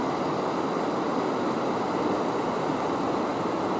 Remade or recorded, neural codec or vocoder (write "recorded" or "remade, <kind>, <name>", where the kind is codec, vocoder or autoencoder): recorded